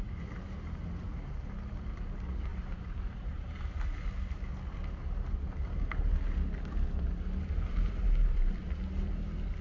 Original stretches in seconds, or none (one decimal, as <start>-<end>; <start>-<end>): 0.0-2.5; 3.7-7.7; 8.6-9.6

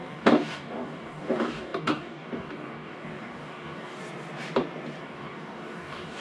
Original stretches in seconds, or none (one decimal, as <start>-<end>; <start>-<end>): 4.0-5.0